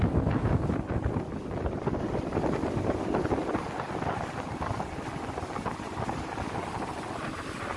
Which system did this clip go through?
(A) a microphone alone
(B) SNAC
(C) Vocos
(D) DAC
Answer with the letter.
A